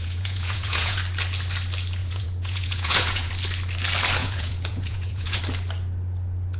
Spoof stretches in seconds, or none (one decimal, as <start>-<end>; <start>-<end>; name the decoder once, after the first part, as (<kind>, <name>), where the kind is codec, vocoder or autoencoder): 0.0-1.0 (vocoder, Vocos); 2.0-3.3; 4.2-5.4